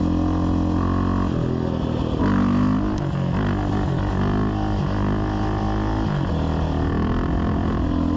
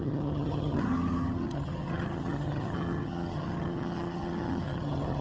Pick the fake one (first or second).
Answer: second